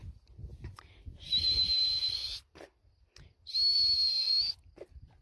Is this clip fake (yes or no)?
no